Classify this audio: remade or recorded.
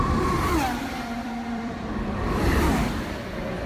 remade